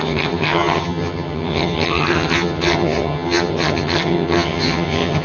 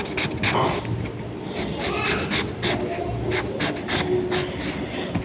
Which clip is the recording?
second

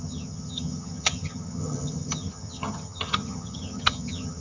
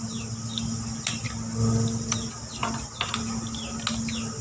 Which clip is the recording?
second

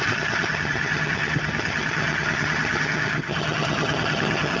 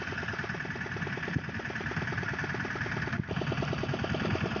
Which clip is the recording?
second